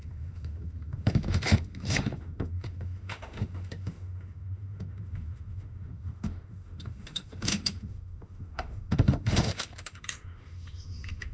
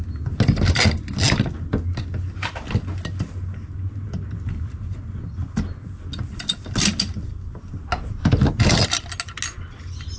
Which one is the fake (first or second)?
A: first